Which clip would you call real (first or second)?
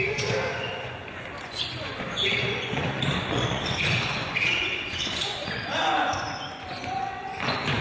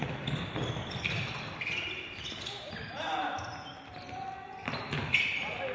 second